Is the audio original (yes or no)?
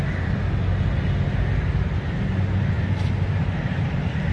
yes